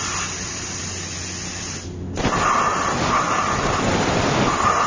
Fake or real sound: real